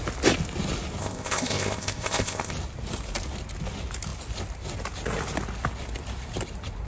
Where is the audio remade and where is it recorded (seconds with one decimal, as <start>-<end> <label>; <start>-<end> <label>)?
0.0-1.0 recorded; 1.0-2.5 remade; 2.5-6.9 recorded